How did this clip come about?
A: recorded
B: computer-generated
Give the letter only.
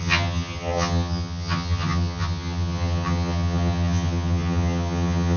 B